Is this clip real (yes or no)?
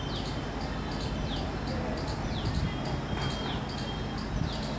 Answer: yes